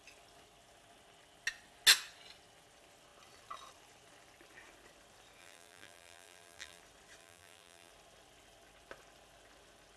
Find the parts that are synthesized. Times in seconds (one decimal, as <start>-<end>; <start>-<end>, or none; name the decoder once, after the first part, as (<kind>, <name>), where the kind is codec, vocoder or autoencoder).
5.4-6.8 (vocoder, BigVGAN v2); 7.2-7.9